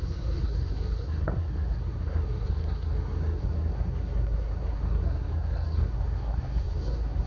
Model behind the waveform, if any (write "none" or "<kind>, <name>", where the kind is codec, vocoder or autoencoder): codec, SNAC